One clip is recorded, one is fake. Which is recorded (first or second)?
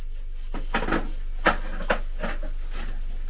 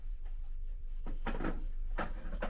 first